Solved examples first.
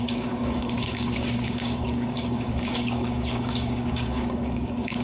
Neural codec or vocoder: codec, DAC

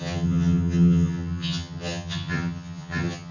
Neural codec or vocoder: vocoder, HiFi-GAN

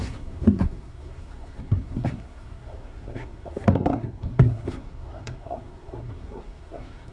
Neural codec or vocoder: codec, SNAC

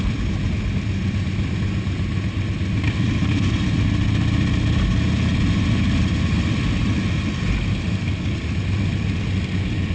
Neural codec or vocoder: none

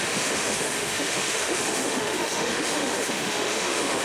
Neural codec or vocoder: autoencoder, DAC-VAE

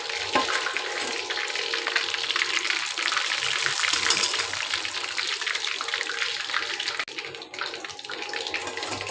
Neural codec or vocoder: none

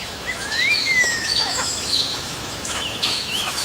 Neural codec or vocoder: autoencoder, DAC-VAE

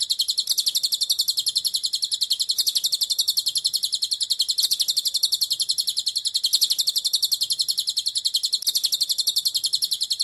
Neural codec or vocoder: none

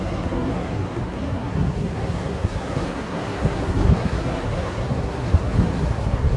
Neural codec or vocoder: codec, SNAC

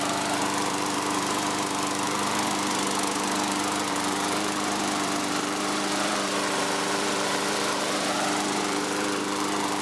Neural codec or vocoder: vocoder, BigVGAN v2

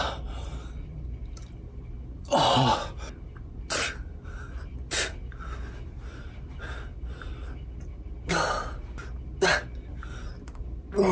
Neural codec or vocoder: none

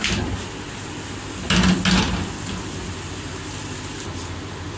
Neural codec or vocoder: none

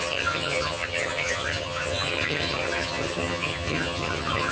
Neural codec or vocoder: vocoder, HiFi-GAN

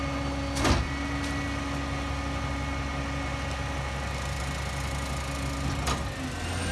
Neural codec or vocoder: none